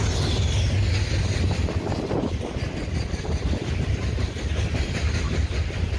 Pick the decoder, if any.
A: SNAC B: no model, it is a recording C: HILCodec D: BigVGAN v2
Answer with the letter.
B